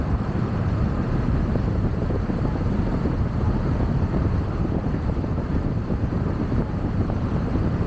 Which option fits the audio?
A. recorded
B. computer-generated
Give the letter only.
B